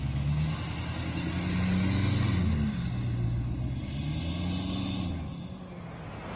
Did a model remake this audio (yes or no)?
no